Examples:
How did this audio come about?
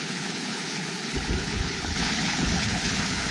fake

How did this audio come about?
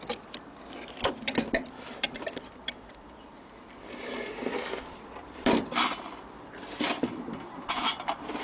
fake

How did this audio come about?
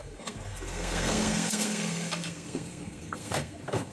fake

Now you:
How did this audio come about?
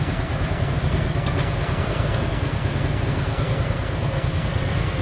fake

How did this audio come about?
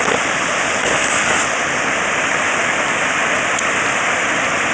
real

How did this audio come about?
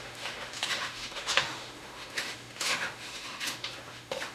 fake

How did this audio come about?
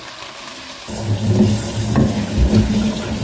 real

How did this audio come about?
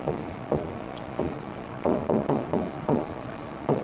fake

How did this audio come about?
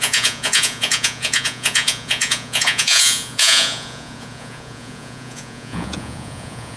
fake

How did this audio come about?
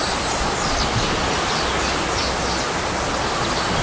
real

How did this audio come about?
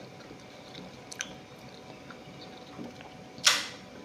real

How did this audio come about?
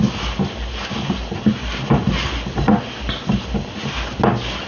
real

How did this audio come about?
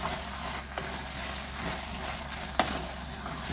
real